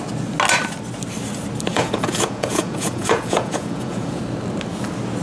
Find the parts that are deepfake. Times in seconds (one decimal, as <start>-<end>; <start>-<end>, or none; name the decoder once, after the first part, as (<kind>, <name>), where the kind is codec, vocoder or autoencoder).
1.7-4.2 (vocoder, Vocos)